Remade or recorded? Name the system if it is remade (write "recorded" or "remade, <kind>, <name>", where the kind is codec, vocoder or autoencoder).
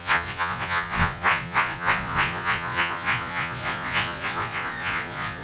remade, vocoder, Vocos